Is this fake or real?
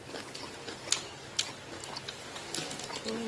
real